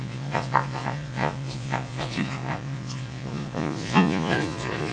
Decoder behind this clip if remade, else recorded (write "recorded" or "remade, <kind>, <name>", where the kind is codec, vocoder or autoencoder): remade, vocoder, Vocos